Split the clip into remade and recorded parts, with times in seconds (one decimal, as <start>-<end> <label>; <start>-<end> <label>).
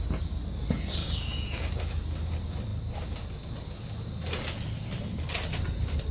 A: 0.0-1.0 recorded; 1.0-1.7 remade; 1.7-6.1 recorded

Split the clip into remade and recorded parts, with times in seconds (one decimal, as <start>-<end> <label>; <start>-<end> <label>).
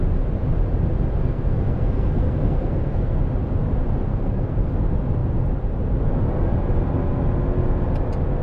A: 0.0-1.2 recorded; 1.2-3.2 remade; 3.2-4.1 recorded; 4.1-4.7 remade; 4.7-8.4 recorded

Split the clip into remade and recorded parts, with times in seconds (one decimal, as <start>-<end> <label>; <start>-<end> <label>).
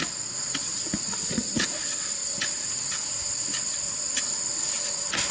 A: 0.0-5.3 recorded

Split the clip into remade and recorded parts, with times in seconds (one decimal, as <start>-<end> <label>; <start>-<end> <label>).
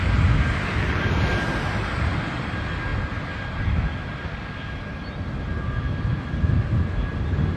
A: 0.0-7.6 recorded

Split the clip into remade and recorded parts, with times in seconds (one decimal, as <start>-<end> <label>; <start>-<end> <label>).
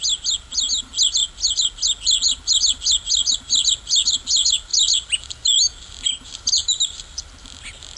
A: 0.0-6.6 recorded; 6.6-7.2 remade; 7.2-8.0 recorded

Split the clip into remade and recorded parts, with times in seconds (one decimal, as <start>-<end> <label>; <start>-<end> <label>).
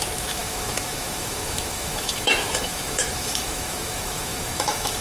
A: 0.0-5.0 remade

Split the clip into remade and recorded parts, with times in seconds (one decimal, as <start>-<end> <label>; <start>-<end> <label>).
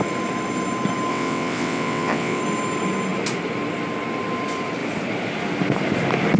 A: 0.0-1.1 recorded; 1.1-2.4 remade; 2.4-6.4 recorded